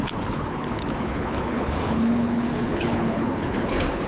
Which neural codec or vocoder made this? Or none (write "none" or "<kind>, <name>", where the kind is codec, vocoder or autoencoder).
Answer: codec, HILCodec